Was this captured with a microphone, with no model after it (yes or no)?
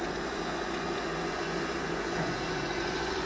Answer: no